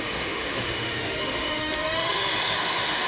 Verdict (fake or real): fake